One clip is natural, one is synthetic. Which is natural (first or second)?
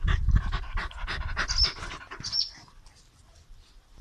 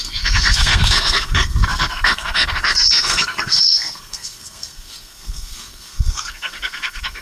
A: first